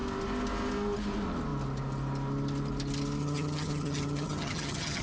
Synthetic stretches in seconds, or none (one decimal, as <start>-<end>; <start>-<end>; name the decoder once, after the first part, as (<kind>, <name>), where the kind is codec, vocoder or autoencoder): 3.2-5.0 (vocoder, HiFi-GAN)